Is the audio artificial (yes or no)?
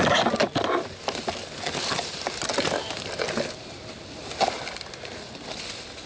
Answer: no